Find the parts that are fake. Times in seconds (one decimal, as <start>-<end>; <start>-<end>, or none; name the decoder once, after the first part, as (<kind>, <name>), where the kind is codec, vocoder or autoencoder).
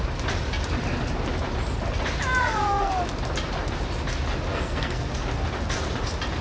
2.4-2.9 (codec, SNAC); 4.5-5.1